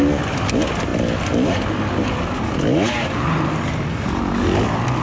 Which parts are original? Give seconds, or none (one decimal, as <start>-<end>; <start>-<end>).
0.0-5.0